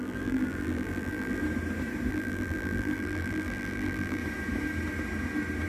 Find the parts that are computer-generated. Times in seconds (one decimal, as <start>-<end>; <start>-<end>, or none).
0.0-1.4; 2.1-4.2